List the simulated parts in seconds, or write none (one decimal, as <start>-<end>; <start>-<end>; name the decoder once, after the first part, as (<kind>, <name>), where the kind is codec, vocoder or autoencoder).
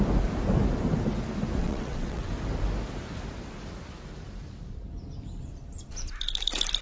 1.6-2.3 (vocoder, WaveNeXt)